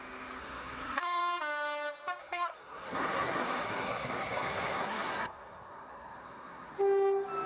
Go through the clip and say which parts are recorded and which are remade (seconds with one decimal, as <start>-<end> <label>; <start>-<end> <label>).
0.0-0.4 recorded; 0.4-1.2 remade; 1.2-2.2 recorded; 2.2-6.7 remade; 6.7-7.5 recorded